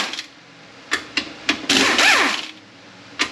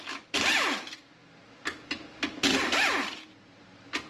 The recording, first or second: second